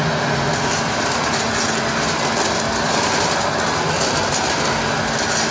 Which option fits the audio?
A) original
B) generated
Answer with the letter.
A